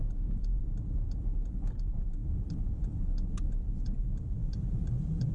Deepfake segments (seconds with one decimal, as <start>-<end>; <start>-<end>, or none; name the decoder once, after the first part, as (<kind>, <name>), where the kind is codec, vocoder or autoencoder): 0.0-0.6 (vocoder, BigVGAN v2); 2.2-4.0; 4.4-5.3

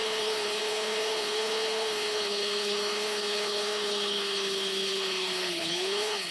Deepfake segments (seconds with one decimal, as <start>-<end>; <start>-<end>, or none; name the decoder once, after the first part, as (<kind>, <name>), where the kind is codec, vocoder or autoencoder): 0.0-6.3 (codec, HILCodec)

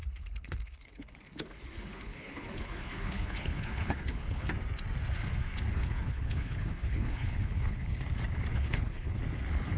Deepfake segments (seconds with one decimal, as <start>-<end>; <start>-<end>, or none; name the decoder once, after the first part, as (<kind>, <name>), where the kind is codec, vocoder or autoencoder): 0.0-4.5 (codec, HILCodec); 5.7-8.0; 8.5-9.2